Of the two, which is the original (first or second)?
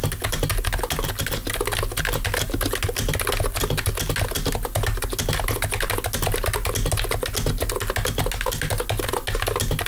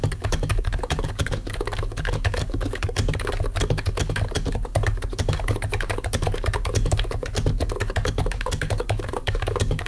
first